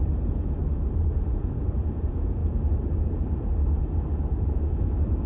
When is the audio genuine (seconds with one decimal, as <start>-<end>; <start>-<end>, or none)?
0.6-1.2; 2.4-4.3